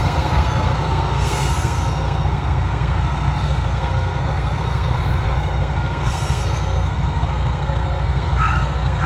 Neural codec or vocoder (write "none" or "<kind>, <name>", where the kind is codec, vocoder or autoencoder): codec, SNAC